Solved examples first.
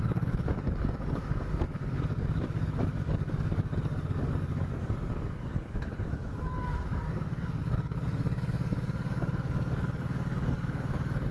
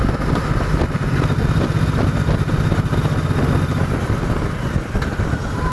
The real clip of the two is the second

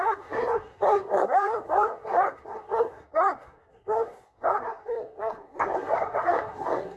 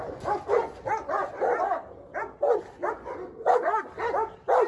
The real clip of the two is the second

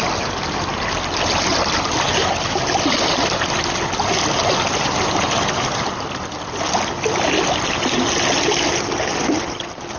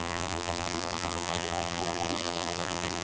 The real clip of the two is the first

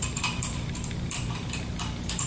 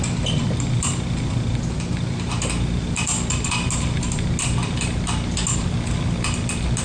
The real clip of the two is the second